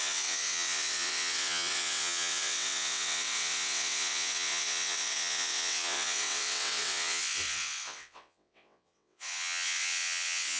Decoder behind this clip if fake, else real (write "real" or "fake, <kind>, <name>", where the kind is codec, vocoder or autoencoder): fake, vocoder, WaveNeXt